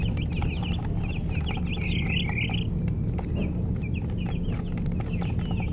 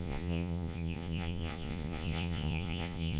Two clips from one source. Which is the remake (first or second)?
second